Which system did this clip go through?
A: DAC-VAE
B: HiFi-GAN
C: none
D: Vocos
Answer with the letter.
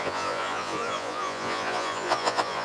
D